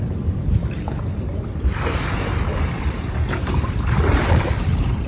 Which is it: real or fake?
fake